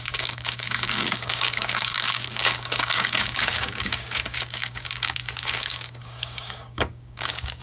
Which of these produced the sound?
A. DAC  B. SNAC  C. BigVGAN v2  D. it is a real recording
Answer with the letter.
A